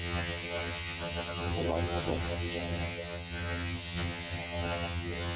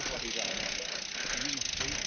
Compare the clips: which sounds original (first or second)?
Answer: second